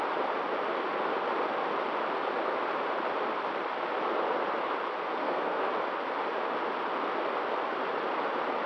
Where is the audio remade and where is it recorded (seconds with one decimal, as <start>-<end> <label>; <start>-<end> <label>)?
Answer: 0.0-5.2 recorded; 5.2-5.7 remade; 5.7-8.7 recorded